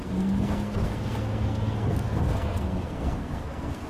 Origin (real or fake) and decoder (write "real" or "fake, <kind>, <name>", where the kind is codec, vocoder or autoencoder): fake, codec, SNAC